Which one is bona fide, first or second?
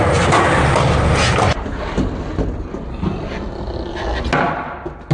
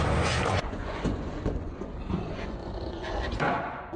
first